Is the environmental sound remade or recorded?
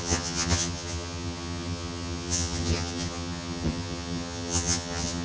remade